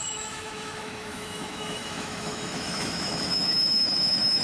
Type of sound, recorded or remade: remade